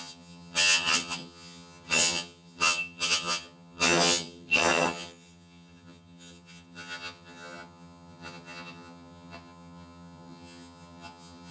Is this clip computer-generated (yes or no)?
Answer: yes